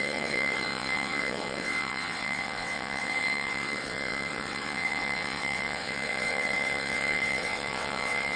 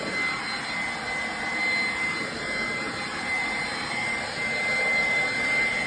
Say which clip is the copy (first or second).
first